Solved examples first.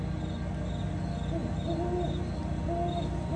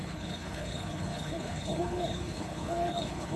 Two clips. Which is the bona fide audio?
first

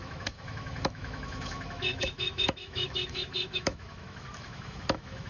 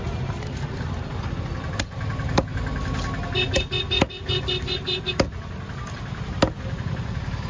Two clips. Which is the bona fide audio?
second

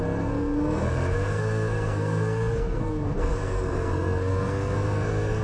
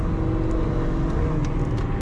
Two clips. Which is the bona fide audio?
second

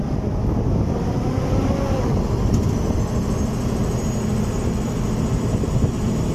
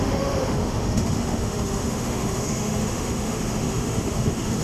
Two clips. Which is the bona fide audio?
first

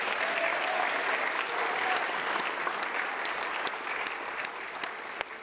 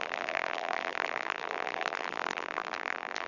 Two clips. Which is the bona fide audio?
first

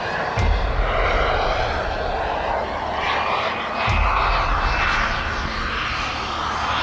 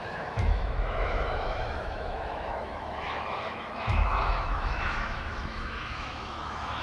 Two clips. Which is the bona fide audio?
first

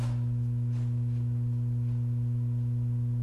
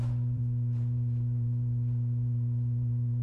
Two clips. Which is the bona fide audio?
first